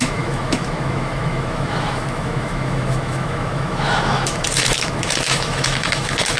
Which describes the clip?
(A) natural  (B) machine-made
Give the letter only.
B